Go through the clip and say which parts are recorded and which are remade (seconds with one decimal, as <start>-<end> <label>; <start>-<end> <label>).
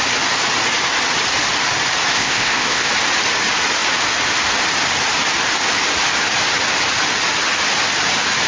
0.0-2.1 recorded; 2.1-2.9 remade; 2.9-8.5 recorded